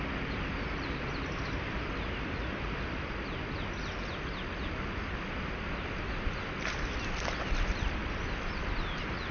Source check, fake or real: real